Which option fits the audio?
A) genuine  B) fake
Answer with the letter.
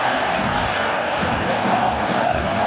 B